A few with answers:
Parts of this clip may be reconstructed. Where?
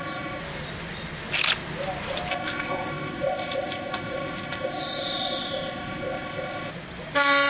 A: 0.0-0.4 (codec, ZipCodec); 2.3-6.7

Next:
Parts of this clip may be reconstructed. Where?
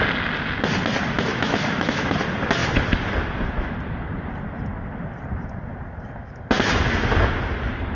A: 1.3-2.1 (autoencoder, DAC-VAE)